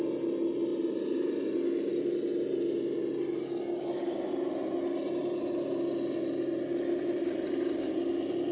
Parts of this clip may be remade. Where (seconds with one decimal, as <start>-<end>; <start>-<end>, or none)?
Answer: none